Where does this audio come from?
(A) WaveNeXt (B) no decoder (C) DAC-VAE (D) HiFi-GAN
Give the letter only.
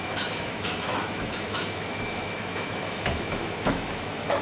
C